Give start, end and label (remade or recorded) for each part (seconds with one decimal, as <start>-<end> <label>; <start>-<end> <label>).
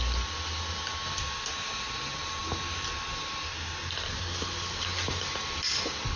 0.0-6.2 recorded